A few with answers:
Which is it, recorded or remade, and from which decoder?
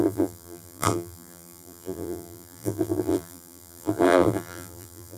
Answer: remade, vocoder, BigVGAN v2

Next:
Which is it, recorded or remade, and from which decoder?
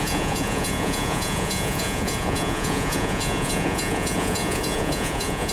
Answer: remade, vocoder, Vocos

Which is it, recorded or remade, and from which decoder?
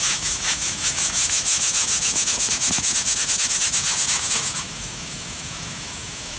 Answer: remade, autoencoder, DAC-VAE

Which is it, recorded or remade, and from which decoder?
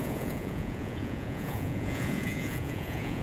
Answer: remade, vocoder, Vocos